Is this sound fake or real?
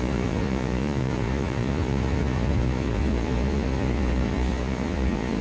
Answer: fake